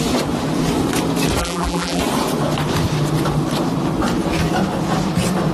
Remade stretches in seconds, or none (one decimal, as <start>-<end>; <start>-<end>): 1.4-2.0